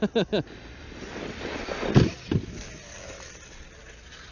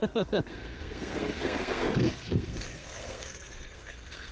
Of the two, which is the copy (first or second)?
second